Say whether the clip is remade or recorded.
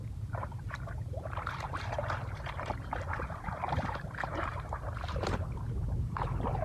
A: remade